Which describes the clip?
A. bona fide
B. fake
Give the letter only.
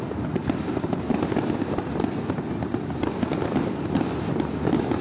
A